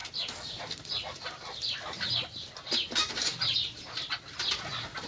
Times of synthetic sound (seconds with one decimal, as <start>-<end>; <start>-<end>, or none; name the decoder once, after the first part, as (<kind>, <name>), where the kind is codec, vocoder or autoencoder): none